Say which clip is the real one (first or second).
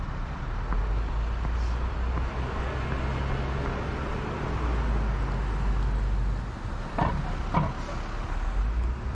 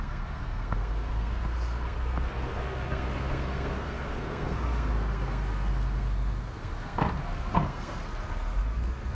first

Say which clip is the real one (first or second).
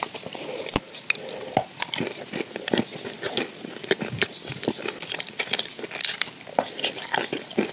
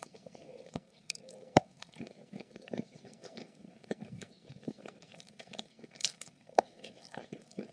first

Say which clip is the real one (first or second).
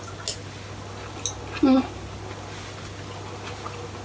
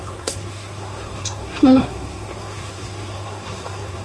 first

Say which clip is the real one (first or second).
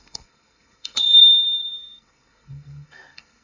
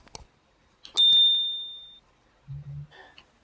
second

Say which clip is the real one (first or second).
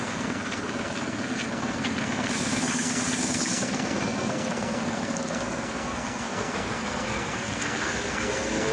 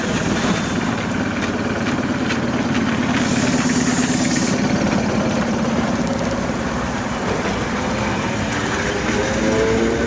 second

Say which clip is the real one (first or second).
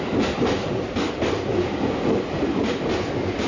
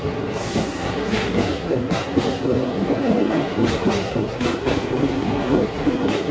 first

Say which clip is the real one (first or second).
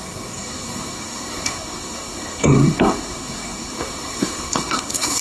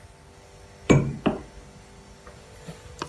second